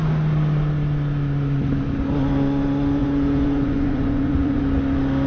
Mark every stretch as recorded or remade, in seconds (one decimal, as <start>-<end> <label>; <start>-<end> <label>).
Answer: 0.0-3.0 recorded; 3.0-4.6 remade; 4.6-5.3 recorded